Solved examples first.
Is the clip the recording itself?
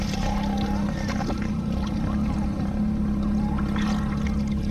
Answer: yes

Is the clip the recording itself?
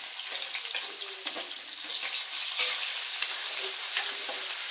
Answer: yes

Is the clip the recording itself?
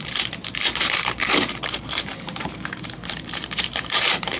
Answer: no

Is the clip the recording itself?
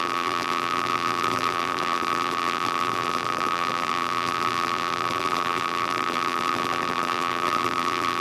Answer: no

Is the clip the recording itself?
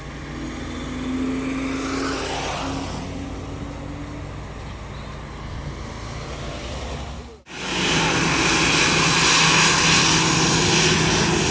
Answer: yes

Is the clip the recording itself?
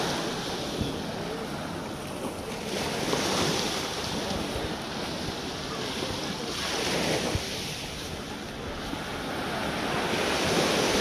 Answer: yes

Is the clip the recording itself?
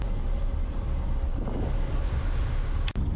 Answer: yes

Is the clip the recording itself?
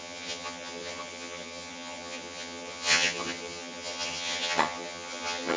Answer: no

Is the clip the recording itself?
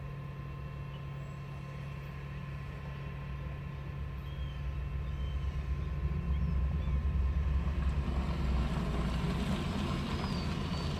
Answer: yes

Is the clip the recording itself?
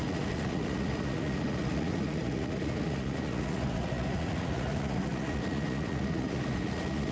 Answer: no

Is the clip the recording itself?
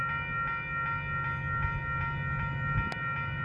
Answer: yes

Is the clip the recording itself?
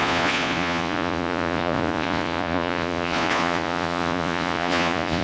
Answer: no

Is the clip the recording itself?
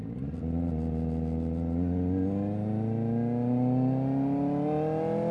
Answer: yes